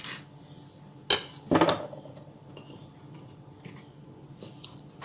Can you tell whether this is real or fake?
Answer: real